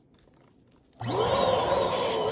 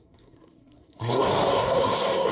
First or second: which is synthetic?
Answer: second